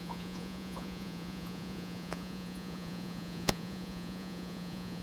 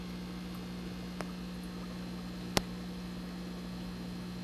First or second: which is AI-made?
first